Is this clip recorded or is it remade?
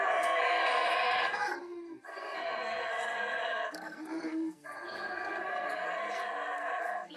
remade